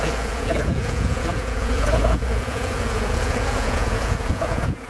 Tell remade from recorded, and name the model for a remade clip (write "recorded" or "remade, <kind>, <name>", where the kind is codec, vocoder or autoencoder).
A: remade, vocoder, Vocos